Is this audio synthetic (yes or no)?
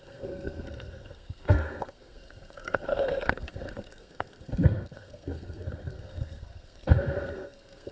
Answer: yes